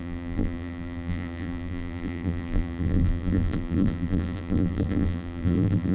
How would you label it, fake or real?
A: fake